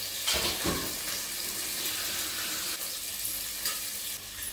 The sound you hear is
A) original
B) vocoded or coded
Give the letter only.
A